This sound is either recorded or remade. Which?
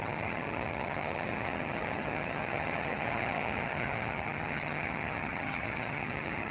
remade